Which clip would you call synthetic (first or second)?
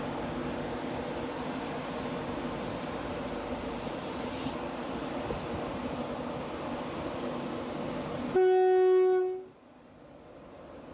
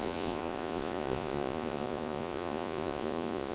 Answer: second